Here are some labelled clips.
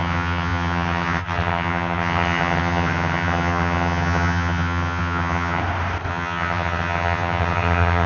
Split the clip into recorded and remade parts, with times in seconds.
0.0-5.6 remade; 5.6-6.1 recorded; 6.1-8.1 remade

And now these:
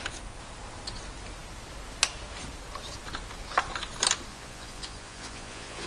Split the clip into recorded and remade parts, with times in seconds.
0.0-4.3 recorded; 4.3-5.9 remade

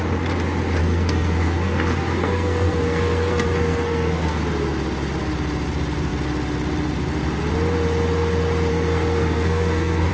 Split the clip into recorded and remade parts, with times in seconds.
0.0-0.8 recorded; 0.8-4.4 remade; 4.4-8.7 recorded; 8.7-10.1 remade

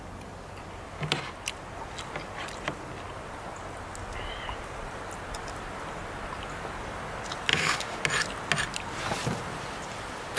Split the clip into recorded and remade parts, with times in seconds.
0.0-7.5 recorded; 7.5-8.0 remade; 8.0-10.4 recorded